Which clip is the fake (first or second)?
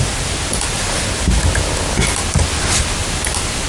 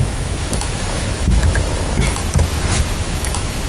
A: second